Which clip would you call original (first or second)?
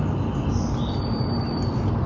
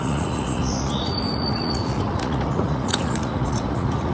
first